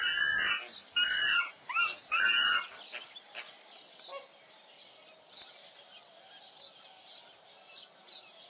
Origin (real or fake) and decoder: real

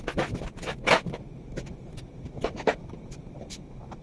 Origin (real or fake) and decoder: real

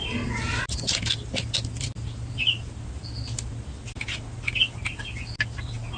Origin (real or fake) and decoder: real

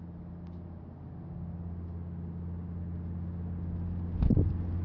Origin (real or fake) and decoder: real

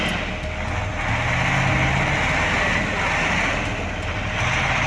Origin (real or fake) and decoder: real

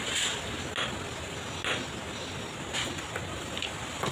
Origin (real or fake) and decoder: real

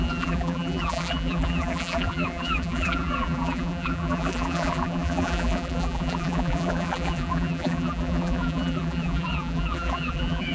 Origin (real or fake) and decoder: fake, vocoder, BigVGAN v2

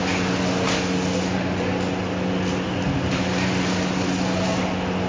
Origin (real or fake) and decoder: real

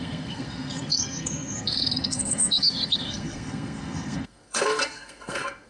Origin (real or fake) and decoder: fake, codec, SNAC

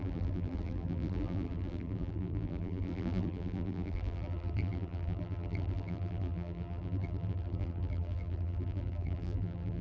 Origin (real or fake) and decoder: fake, vocoder, BigVGAN v2